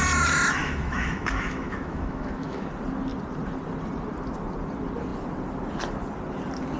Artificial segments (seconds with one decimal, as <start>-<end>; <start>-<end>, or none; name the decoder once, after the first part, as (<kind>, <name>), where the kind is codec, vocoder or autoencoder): 0.6-2.7 (autoencoder, DAC-VAE)